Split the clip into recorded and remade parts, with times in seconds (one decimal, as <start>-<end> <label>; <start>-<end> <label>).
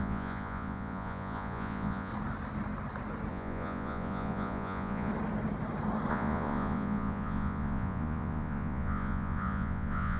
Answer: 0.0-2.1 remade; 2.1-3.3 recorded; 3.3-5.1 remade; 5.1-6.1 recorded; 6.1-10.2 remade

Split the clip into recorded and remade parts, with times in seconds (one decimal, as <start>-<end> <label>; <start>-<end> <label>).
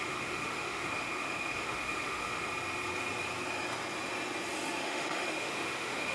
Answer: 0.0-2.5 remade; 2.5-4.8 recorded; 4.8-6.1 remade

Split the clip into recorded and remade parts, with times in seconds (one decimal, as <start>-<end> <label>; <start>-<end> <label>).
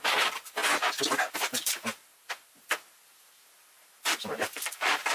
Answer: 0.0-0.6 remade; 0.6-1.3 recorded; 1.3-2.1 remade; 2.1-3.7 recorded; 3.7-5.1 remade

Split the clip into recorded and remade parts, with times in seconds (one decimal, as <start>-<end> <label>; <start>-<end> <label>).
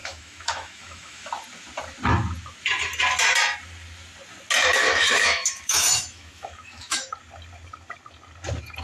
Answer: 0.0-1.3 remade; 1.3-4.8 recorded; 4.8-7.1 remade; 7.1-8.8 recorded